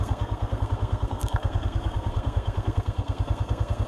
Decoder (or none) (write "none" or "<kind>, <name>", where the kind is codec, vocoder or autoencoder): codec, SNAC